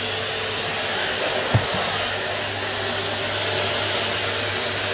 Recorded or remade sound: recorded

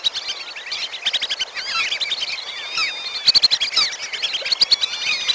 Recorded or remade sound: recorded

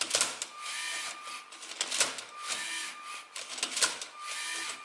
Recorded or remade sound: recorded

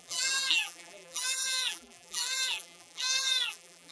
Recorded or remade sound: remade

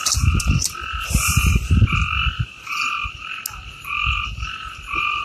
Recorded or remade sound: recorded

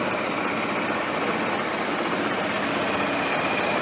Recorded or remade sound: recorded